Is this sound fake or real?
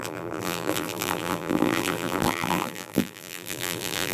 fake